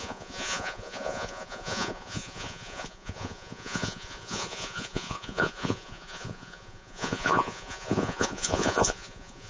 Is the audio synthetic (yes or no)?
yes